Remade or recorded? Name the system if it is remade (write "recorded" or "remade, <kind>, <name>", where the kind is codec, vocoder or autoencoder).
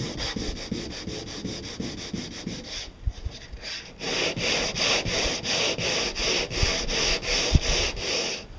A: recorded